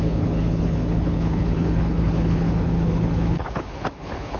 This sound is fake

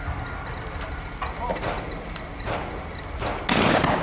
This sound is real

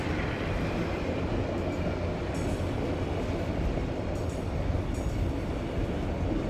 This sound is real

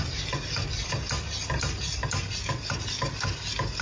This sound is real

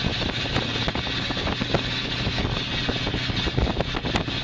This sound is real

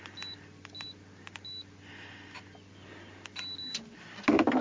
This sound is real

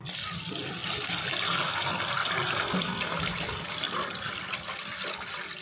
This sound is real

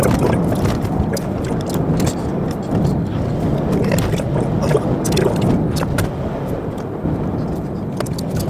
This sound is real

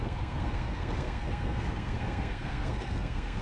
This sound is fake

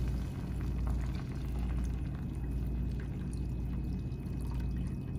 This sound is real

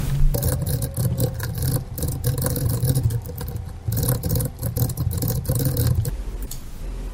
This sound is real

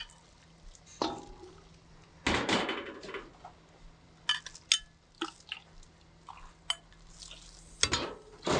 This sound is real